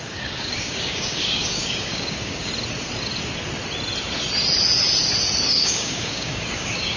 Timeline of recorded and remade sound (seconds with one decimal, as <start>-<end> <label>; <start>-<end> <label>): 0.0-2.5 remade; 2.5-5.4 recorded; 5.4-7.0 remade